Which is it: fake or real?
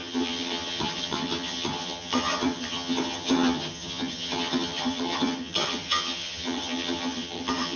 fake